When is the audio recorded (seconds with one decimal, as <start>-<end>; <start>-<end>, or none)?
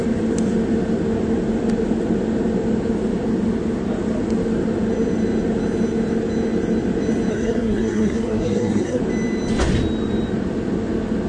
0.0-7.3; 9.0-11.3